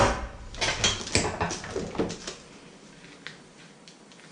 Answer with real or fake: real